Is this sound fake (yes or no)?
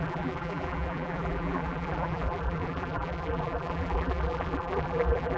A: yes